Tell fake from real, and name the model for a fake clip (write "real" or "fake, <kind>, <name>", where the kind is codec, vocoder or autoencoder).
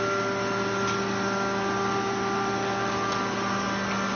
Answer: real